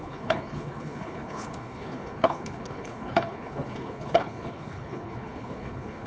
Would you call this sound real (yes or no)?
no